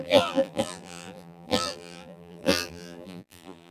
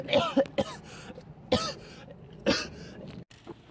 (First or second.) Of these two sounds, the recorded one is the second